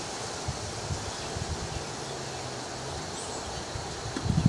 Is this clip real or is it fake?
real